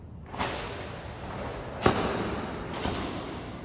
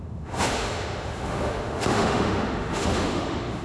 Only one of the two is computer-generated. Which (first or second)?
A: second